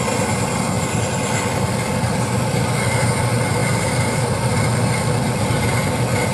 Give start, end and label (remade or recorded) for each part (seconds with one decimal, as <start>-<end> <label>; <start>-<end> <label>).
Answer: 0.0-6.3 recorded